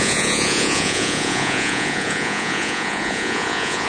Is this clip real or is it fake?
fake